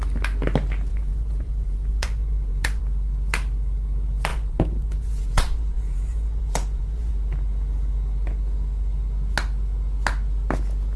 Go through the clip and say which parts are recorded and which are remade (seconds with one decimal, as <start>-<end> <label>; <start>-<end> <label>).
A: 0.0-0.9 recorded; 0.9-2.8 remade; 2.8-4.3 recorded; 4.3-7.1 remade; 7.1-11.0 recorded